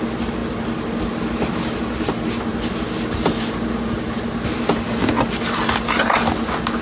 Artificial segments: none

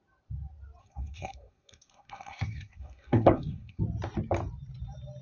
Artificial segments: 0.8-3.8 (codec, SNAC)

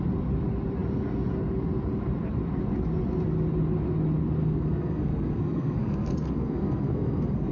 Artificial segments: 4.4-7.5 (codec, SNAC)

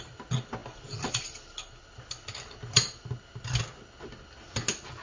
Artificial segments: none

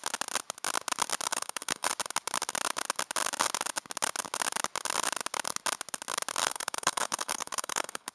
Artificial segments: 1.3-1.9 (codec, SNAC); 6.4-8.1

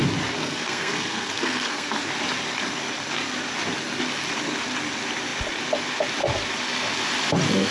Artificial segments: 0.4-1.9 (codec, SNAC)